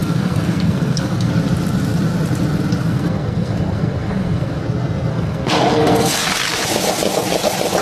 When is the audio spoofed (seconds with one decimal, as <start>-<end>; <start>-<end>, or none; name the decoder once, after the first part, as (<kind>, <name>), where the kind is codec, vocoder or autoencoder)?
0.0-1.3 (codec, SNAC); 2.8-4.6; 5.1-6.2